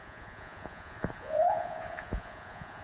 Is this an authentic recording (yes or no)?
no